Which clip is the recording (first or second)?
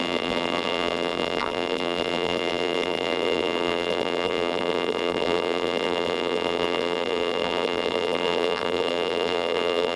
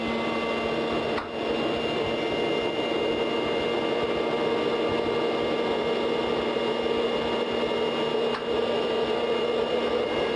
second